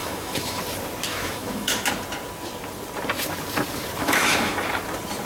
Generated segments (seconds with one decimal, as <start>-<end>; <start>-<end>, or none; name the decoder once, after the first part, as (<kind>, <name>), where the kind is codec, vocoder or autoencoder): 0.0-0.6 (autoencoder, DAC-VAE); 1.1-1.9; 4.0-4.6